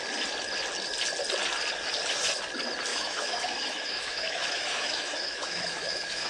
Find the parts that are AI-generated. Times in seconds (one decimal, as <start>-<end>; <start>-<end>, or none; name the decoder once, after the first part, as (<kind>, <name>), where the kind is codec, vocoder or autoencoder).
2.9-6.3 (autoencoder, DAC-VAE)